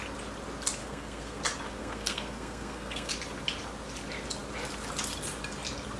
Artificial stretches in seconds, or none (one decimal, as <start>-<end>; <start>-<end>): 0.8-1.4; 1.8-3.1